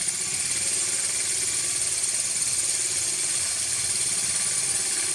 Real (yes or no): yes